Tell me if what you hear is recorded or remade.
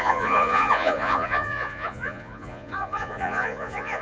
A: remade